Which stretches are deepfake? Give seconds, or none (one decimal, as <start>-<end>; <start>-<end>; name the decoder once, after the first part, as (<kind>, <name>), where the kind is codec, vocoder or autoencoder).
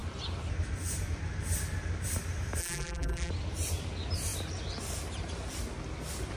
2.6-3.3 (vocoder, BigVGAN v2)